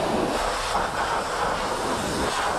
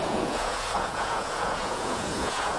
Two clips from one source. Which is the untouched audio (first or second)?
first